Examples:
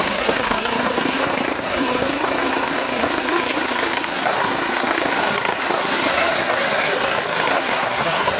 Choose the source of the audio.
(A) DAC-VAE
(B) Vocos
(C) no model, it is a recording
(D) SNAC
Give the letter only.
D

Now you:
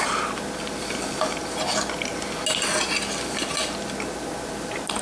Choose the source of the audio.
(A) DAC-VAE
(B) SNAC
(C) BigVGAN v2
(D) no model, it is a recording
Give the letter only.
D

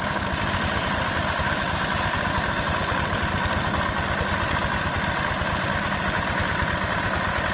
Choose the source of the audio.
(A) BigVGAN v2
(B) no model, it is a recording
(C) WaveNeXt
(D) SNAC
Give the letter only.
A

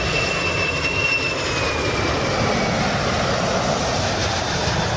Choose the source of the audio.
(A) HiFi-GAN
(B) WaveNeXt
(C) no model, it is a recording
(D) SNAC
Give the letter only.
C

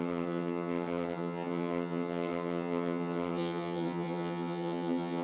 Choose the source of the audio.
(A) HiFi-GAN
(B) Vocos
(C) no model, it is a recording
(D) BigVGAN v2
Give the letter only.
A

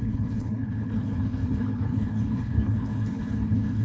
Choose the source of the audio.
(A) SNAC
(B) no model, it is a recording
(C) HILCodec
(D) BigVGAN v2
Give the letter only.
C